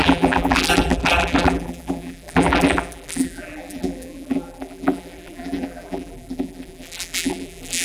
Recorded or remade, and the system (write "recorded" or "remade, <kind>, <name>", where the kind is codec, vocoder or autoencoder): remade, vocoder, BigVGAN v2